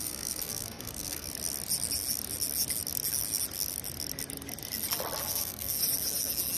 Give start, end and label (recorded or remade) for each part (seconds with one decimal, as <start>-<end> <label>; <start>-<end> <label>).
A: 0.0-1.3 remade; 1.3-5.3 recorded; 5.3-5.8 remade; 5.8-6.6 recorded